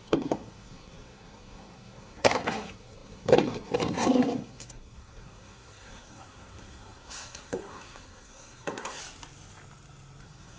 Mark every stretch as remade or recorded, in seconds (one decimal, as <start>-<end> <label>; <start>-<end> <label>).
0.0-9.0 remade; 9.0-10.2 recorded; 10.2-10.6 remade